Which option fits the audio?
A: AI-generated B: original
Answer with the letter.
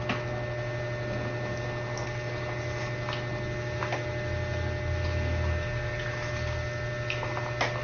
B